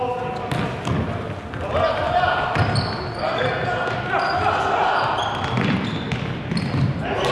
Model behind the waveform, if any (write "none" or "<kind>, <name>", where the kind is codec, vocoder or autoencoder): none